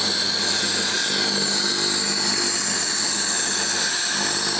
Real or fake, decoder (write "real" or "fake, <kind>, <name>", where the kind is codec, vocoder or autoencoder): real